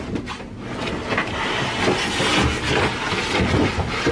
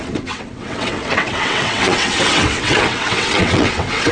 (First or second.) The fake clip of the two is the second